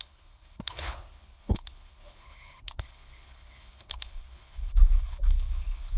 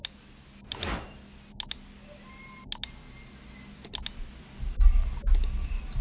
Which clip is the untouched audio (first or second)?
second